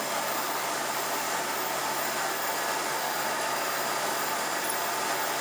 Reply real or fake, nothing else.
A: real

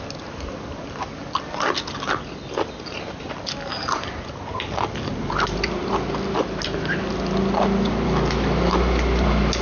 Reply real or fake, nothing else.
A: real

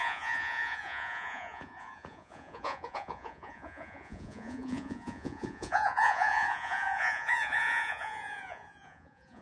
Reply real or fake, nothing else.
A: fake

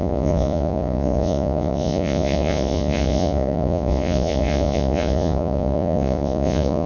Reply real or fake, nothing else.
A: fake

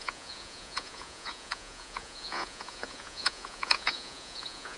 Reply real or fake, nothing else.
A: fake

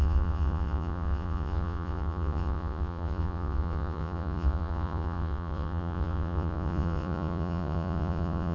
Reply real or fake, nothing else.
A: fake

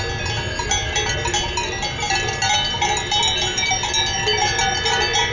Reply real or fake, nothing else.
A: real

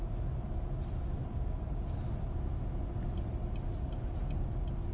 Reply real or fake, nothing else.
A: real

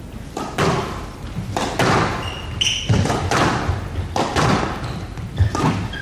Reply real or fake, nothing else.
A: real